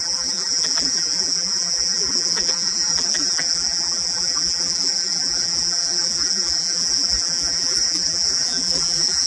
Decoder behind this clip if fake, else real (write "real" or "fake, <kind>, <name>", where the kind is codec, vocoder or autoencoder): fake, vocoder, BigVGAN v2